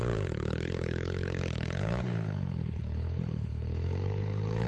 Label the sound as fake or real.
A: fake